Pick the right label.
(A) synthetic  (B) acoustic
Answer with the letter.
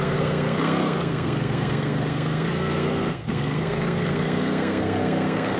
A